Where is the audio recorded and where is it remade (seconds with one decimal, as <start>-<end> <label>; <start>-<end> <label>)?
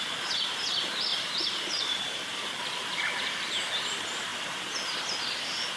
0.0-1.1 recorded; 1.1-3.7 remade; 3.7-5.8 recorded